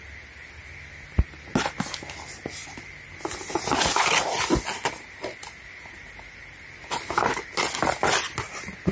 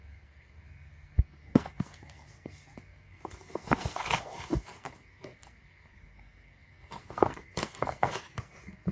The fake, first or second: second